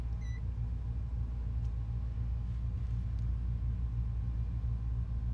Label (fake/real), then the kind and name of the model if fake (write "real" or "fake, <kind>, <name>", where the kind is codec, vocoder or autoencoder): real